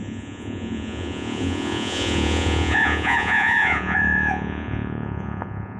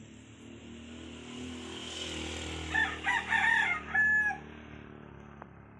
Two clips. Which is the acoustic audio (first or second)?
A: second